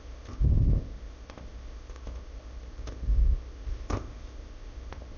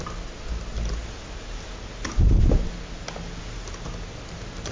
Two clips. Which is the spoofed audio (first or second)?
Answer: first